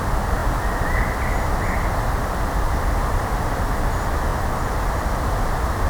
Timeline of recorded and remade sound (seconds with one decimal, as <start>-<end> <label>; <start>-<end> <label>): 0.0-5.9 recorded